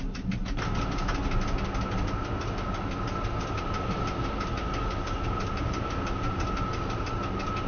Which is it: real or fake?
real